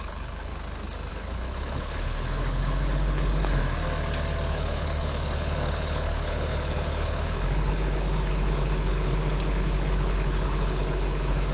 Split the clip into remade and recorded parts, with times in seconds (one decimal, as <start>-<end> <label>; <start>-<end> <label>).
0.0-0.5 remade; 0.5-1.1 recorded; 1.1-3.6 remade; 3.6-4.5 recorded; 4.5-11.5 remade